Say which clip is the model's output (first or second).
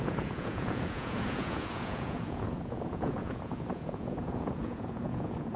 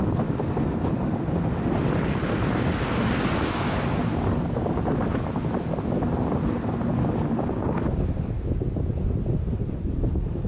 first